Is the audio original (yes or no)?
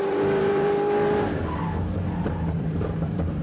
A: no